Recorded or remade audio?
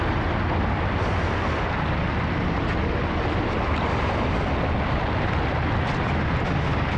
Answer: recorded